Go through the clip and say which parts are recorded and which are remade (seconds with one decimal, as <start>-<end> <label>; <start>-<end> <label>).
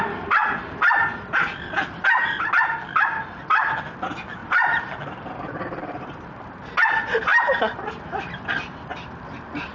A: 0.0-4.4 recorded; 4.4-6.6 remade; 6.6-9.7 recorded